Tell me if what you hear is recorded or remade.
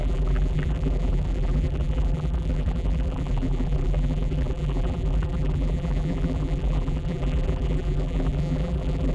remade